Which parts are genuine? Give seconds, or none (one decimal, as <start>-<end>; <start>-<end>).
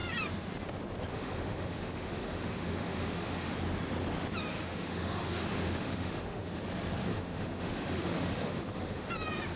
0.0-1.1; 3.5-4.5; 6.6-7.1; 9.1-9.6